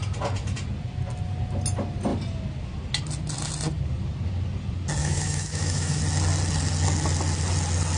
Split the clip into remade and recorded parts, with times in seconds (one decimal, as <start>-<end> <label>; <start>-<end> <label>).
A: 0.0-5.0 recorded; 5.0-6.0 remade; 6.0-8.0 recorded